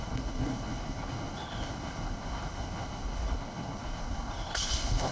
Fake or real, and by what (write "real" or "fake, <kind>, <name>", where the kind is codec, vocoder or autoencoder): fake, codec, HILCodec